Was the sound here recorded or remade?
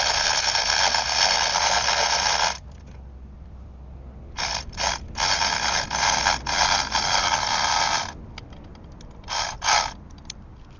recorded